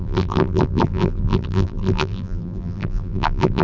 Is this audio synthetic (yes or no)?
yes